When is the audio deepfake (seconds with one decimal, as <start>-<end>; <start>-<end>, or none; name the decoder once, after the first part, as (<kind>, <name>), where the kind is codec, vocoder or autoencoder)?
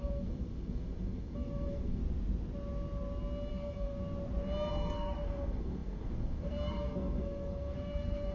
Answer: 0.0-2.0 (codec, SNAC); 3.5-4.0; 4.7-8.3